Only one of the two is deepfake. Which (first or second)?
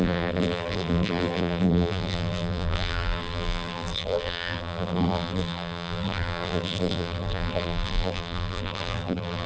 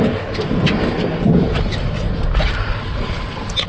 first